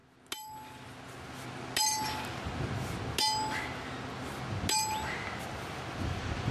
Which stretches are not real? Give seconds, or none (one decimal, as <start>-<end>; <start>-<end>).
none